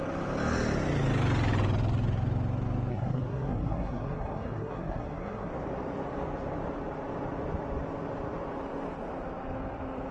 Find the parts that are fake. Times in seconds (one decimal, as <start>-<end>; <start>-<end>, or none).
2.9-5.5

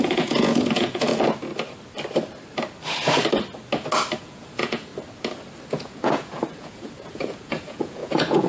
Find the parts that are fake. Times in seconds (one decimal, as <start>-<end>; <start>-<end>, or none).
0.0-1.1; 4.2-4.9; 5.7-8.5